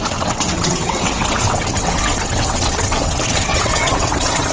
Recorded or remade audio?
remade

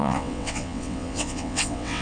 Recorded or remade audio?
remade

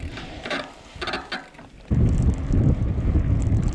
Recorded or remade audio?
recorded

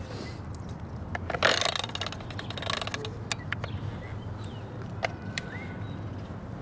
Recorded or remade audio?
recorded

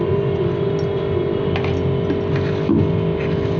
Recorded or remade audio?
recorded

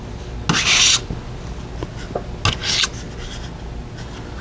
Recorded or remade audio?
recorded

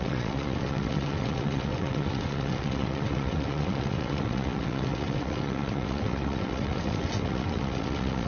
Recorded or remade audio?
remade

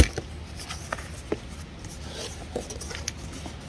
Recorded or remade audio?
recorded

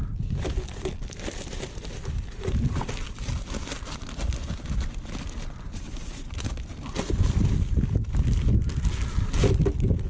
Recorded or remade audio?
recorded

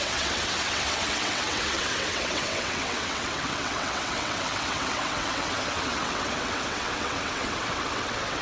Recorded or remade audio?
remade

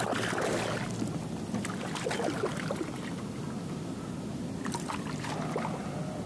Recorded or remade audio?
recorded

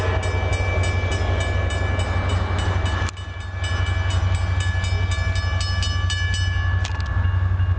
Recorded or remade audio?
recorded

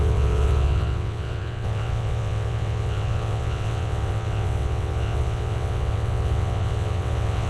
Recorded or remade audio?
remade